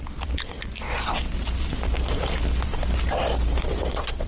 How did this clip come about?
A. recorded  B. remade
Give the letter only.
A